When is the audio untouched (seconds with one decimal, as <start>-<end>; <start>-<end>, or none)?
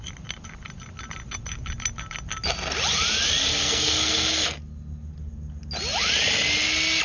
0.0-3.5; 4.6-7.0